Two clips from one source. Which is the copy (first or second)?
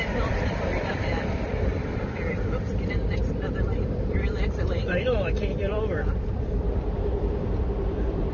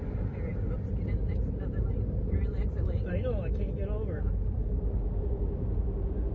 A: first